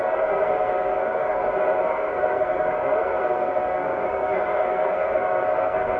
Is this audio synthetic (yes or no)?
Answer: yes